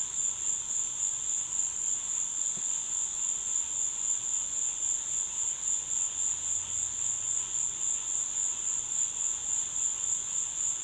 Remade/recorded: remade